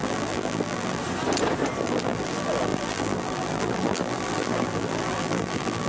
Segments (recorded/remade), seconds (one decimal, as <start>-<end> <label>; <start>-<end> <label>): 0.0-1.0 remade; 1.0-1.8 recorded; 1.8-5.9 remade

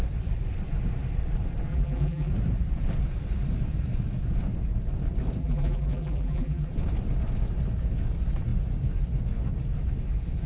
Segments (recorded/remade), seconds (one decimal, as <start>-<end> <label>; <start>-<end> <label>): 0.0-1.7 recorded; 1.7-2.3 remade; 2.3-5.4 recorded; 5.4-6.7 remade; 6.7-10.5 recorded

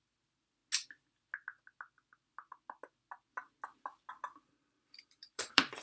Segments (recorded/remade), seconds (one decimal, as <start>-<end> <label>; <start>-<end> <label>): 0.0-0.6 remade; 0.6-4.1 recorded; 4.1-5.8 remade